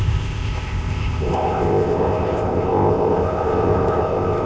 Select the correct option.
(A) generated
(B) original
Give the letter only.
A